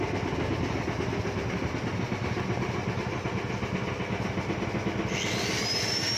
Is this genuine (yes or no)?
yes